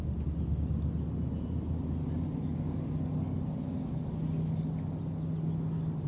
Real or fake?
real